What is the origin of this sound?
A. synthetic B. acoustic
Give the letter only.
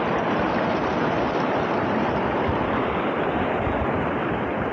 B